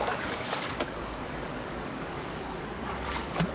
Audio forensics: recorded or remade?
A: remade